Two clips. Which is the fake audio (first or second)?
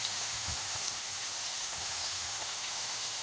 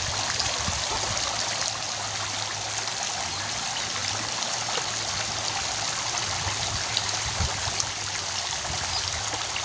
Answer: first